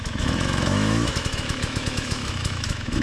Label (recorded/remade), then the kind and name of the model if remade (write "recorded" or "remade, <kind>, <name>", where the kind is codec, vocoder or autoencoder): remade, autoencoder, DAC-VAE